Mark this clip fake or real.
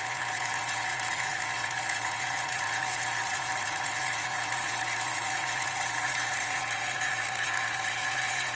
fake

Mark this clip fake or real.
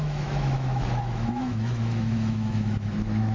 fake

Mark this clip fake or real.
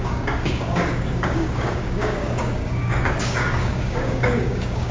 fake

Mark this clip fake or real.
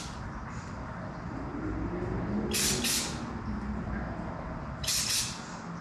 real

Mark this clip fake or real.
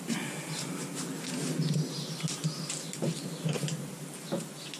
real